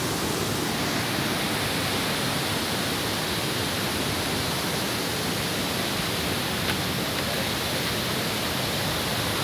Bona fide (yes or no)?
yes